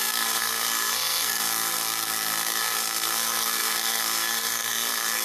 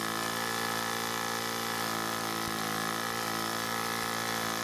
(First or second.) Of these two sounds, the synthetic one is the first